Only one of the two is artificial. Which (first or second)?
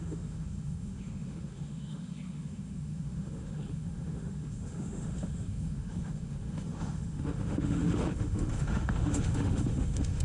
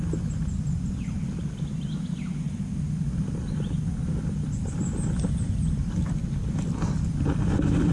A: first